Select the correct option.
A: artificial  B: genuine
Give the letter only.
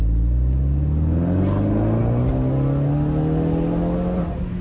B